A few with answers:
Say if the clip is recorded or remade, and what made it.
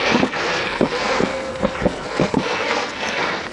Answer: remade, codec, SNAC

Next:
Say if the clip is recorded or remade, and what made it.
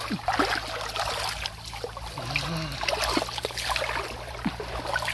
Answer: recorded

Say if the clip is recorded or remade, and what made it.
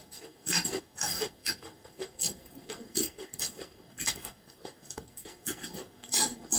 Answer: remade, codec, SNAC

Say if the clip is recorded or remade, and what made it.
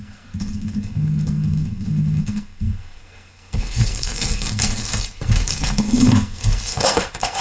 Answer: remade, codec, SNAC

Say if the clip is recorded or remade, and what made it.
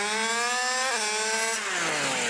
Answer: recorded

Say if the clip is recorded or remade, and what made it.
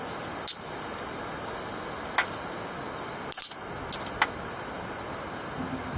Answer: recorded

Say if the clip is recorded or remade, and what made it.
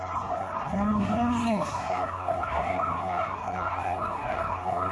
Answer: remade, codec, SNAC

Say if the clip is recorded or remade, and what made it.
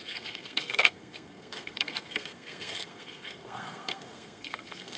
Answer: remade, codec, SNAC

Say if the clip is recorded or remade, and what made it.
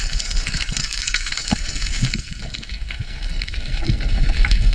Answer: remade, codec, SNAC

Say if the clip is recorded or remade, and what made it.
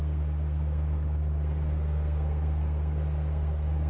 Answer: remade, codec, SNAC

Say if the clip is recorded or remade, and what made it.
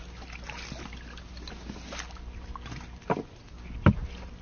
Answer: recorded